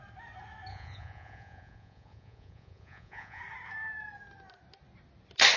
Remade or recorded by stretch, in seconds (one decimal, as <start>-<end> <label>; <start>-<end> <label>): 0.0-0.7 recorded; 0.7-3.4 remade; 3.4-5.6 recorded

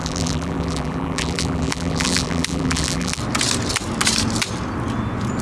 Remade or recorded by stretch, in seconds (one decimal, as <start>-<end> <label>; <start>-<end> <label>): 0.0-3.2 remade; 3.2-5.4 recorded

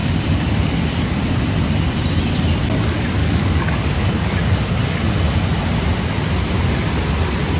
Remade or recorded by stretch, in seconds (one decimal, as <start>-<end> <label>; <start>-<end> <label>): 0.0-1.2 remade; 1.2-3.2 recorded; 3.2-4.8 remade; 4.8-7.6 recorded

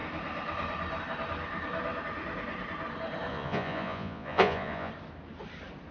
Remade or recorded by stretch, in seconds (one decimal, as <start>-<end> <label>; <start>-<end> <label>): 0.0-3.3 recorded; 3.3-4.9 remade; 4.9-5.9 recorded

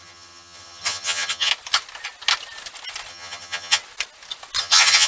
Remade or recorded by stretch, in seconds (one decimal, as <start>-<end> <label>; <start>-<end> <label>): 0.0-1.5 remade; 1.5-3.1 recorded; 3.1-3.8 remade; 3.8-4.6 recorded; 4.6-5.1 remade

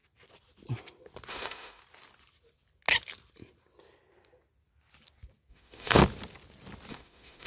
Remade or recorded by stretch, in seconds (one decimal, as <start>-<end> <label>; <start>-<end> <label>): 0.0-1.3 recorded; 1.3-1.8 remade; 1.8-5.5 recorded; 5.5-6.0 remade; 6.0-6.9 recorded; 6.9-7.5 remade

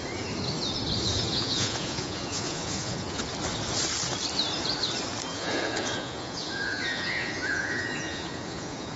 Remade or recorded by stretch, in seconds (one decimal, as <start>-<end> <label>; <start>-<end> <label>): 0.0-1.3 recorded; 1.3-3.2 remade; 3.2-5.3 recorded; 5.3-9.0 remade

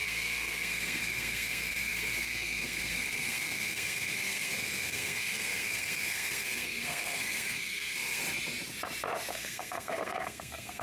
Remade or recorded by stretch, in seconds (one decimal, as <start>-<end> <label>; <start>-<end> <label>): 0.0-8.2 remade; 8.2-9.3 recorded; 9.3-10.8 remade